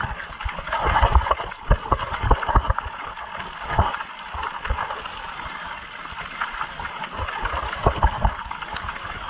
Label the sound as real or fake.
real